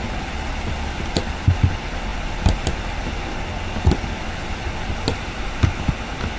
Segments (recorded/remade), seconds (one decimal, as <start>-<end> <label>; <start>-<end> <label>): 0.0-6.4 recorded